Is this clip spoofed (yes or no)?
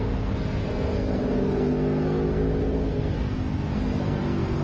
yes